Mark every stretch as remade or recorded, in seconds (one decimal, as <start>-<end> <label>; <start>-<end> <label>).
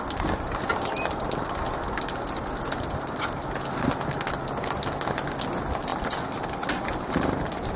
0.0-5.9 recorded; 5.9-7.8 remade